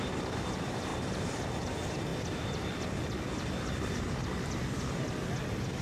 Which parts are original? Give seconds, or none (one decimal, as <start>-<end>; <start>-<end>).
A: 0.9-1.5; 2.1-5.8